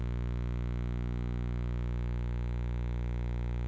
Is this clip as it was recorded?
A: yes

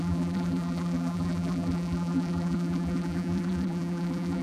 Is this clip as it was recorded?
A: no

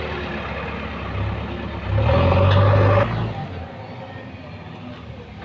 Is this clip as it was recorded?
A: yes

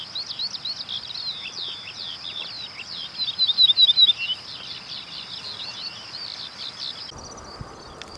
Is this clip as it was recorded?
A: yes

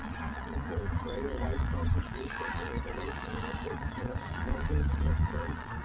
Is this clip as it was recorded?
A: no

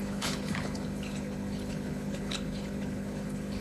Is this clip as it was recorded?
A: no